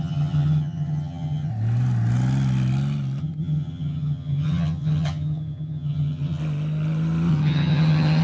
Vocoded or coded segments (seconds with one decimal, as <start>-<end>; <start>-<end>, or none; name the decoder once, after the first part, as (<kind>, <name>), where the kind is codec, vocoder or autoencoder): 0.0-1.5 (vocoder, HiFi-GAN); 3.2-6.4; 7.3-8.2